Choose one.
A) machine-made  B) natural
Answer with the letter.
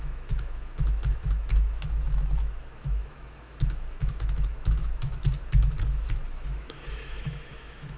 A